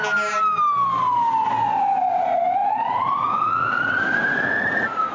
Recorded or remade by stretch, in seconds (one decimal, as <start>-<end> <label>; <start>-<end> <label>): 0.0-2.6 recorded; 2.6-5.1 remade